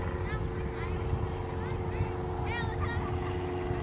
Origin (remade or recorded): recorded